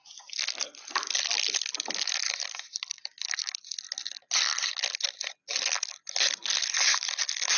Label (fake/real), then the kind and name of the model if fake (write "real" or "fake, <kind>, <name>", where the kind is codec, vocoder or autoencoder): real